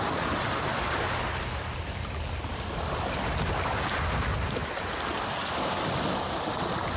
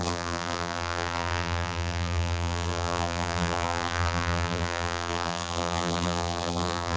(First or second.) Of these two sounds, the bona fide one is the first